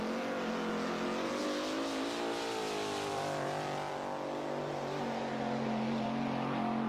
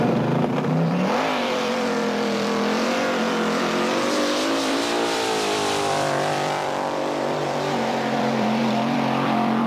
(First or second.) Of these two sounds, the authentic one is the first